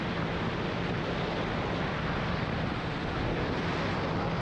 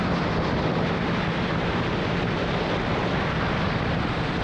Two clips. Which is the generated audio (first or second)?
second